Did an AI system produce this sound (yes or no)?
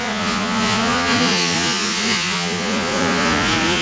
yes